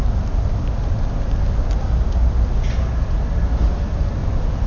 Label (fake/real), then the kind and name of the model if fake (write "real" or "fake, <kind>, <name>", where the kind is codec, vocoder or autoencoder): real